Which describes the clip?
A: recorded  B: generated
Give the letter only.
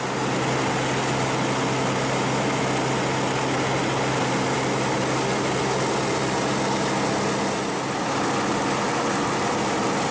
A